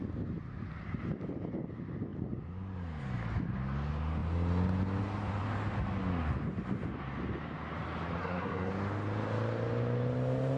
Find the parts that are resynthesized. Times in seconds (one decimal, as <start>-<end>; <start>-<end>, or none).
8.2-8.7